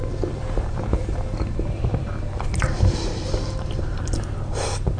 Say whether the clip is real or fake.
fake